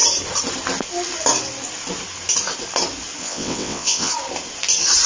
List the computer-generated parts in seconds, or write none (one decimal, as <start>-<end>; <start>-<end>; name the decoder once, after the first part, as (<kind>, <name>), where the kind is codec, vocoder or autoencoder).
3.2-4.1 (vocoder, WaveNeXt)